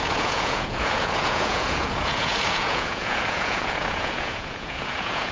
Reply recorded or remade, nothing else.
remade